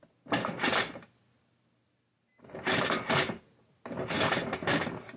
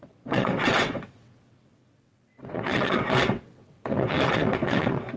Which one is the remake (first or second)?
second